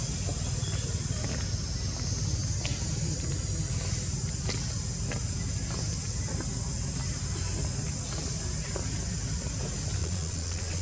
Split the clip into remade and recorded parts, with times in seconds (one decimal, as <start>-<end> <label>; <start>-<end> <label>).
0.0-10.0 recorded; 10.0-10.8 remade